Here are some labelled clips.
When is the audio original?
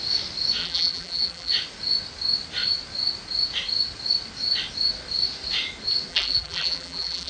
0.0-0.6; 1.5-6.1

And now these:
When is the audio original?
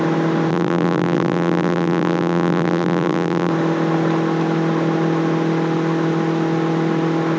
0.0-0.5; 3.5-7.4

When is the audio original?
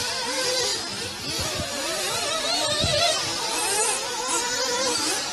0.0-5.3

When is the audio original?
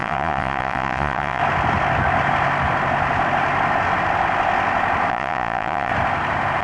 1.4-5.1; 5.9-6.6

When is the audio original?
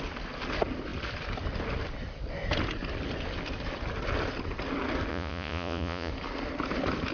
0.0-5.1; 6.1-7.1